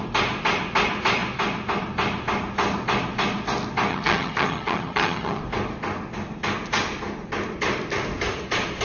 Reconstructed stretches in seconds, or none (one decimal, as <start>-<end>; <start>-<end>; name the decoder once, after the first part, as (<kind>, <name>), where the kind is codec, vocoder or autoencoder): 3.9-5.4 (vocoder, HiFi-GAN)